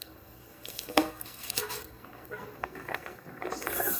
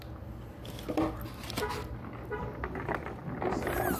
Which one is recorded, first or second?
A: second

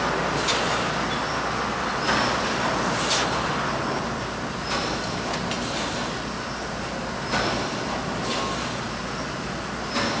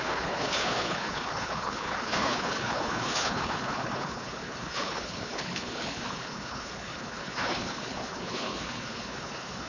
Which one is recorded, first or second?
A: first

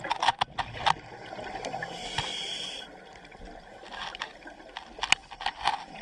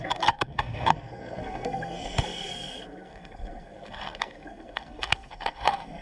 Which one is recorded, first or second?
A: first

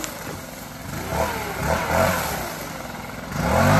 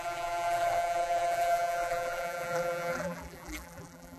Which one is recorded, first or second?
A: first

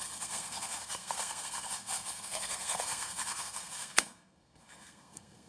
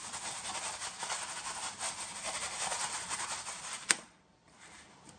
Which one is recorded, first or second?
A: second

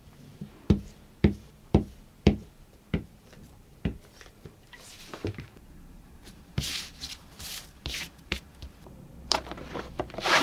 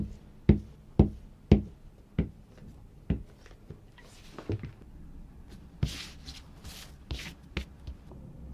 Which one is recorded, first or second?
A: second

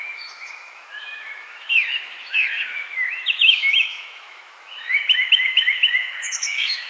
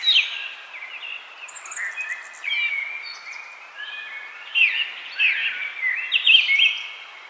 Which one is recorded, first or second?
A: second